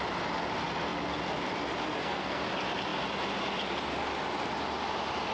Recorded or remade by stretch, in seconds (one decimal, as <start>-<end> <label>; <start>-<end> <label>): 0.0-2.0 recorded; 2.0-2.5 remade; 2.5-5.3 recorded